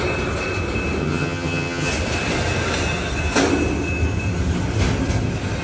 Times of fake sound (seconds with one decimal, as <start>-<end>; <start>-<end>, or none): 1.0-1.9